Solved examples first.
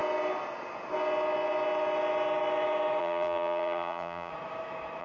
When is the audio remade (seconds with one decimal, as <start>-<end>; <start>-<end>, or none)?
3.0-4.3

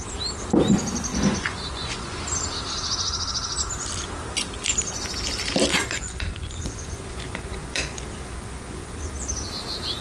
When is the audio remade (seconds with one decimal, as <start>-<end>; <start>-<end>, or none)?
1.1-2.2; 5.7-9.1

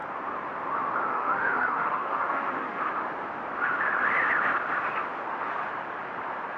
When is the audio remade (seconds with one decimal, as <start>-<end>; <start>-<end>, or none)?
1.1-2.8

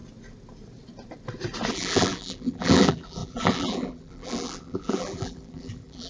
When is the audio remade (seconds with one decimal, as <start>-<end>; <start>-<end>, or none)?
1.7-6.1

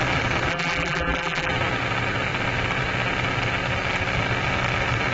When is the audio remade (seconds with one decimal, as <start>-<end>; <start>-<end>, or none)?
0.5-1.5